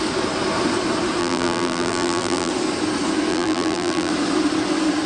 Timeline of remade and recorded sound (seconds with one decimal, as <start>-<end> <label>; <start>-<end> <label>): 0.0-1.2 recorded; 1.2-2.5 remade; 2.5-3.3 recorded; 3.3-4.1 remade; 4.1-5.1 recorded